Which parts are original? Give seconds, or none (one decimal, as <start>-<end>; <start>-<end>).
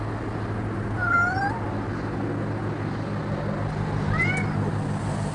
0.0-1.0; 1.7-5.3